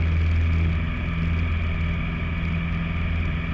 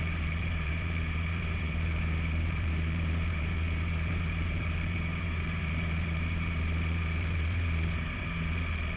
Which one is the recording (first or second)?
first